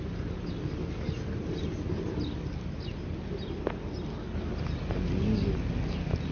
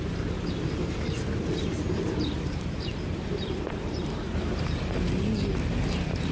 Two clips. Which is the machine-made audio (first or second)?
second